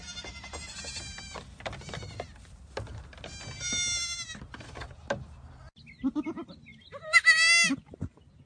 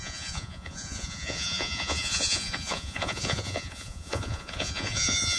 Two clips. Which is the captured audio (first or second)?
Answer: first